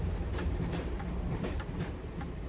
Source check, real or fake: fake